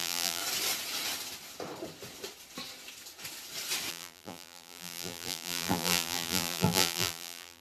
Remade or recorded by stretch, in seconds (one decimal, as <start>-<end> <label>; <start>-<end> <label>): 0.0-0.4 remade; 0.4-3.9 recorded; 3.9-7.6 remade